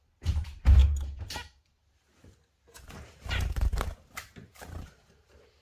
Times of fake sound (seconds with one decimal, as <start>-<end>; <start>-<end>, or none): 0.0-5.6